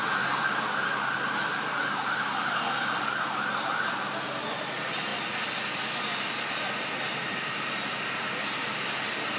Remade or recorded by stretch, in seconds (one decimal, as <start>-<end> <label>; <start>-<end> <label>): 0.0-9.4 recorded